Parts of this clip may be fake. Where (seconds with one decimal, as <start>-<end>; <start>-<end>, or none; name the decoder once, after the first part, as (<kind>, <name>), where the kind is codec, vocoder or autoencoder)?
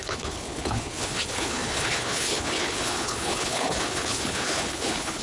0.0-5.2 (codec, HILCodec)